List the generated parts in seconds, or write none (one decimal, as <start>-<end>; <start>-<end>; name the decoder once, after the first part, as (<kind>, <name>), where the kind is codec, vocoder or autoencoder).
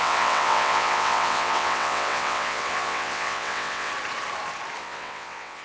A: 0.0-3.9 (vocoder, WaveNeXt); 4.8-5.6